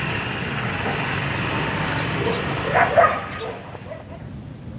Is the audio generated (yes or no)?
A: no